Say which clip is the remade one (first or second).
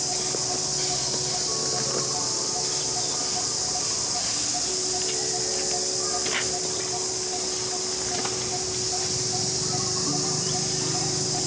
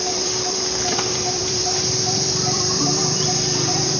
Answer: second